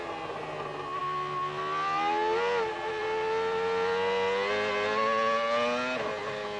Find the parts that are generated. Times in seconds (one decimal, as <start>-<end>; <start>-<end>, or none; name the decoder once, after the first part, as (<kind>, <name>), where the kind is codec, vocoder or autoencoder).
none